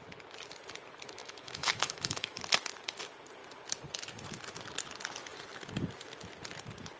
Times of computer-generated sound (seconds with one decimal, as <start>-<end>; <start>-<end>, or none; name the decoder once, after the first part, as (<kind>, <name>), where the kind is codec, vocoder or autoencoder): 1.2-2.4 (autoencoder, DAC-VAE)